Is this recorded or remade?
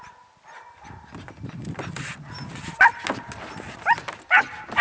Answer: recorded